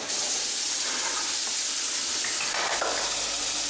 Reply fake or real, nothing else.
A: real